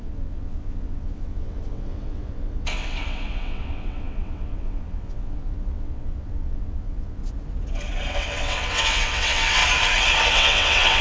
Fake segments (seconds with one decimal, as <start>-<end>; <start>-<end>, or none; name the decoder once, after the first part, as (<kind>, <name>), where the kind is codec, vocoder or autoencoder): 0.0-7.2 (vocoder, WaveNeXt); 8.1-9.6; 10.3-11.0